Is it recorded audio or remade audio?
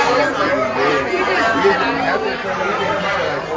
recorded